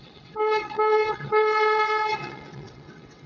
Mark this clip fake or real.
fake